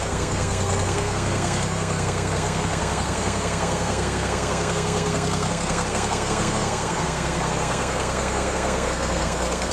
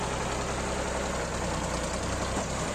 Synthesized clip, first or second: first